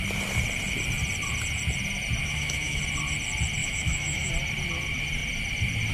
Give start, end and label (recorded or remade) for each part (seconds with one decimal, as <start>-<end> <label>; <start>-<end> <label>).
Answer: 0.0-2.2 recorded; 2.2-2.8 remade; 2.8-3.6 recorded; 3.6-4.3 remade; 4.3-5.9 recorded